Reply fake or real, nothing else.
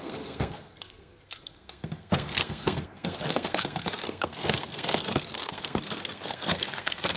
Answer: fake